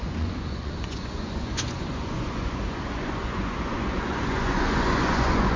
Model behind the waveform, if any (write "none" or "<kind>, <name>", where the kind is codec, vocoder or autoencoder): vocoder, Vocos